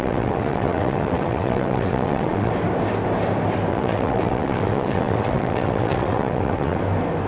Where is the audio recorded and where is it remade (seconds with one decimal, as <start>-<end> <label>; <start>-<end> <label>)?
0.0-2.5 remade; 2.5-3.7 recorded; 3.7-6.8 remade; 6.8-7.3 recorded